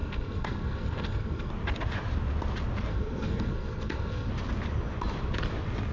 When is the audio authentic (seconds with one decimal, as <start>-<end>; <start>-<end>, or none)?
1.5-2.9; 4.3-5.9